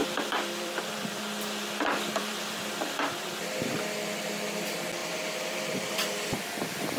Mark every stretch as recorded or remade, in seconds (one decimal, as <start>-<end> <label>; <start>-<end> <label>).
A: 0.0-1.2 remade; 1.2-2.2 recorded; 2.2-3.0 remade; 3.0-5.0 recorded; 5.0-7.0 remade